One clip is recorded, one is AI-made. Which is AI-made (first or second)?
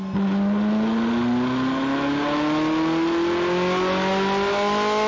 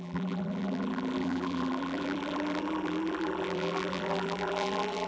second